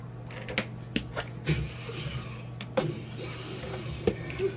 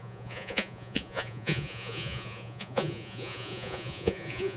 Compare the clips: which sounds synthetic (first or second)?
second